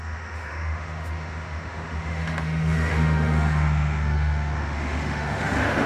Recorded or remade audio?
remade